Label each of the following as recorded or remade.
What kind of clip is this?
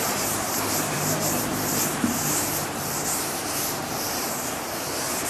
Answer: remade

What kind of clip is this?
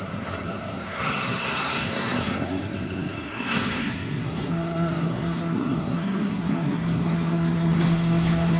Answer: remade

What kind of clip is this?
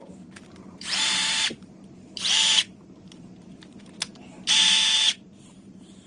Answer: remade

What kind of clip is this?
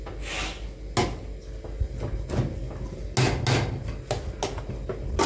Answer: recorded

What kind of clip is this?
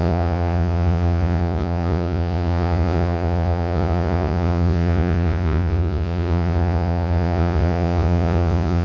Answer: remade